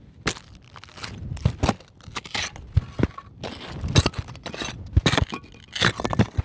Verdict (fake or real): real